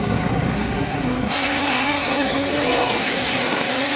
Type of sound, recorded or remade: remade